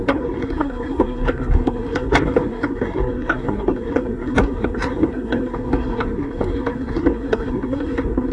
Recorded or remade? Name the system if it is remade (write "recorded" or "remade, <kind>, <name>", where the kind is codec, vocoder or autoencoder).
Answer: remade, codec, SNAC